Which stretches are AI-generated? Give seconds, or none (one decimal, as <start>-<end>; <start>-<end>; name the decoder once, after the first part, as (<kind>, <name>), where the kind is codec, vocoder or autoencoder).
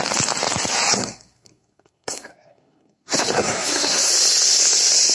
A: 1.0-4.1 (codec, SNAC)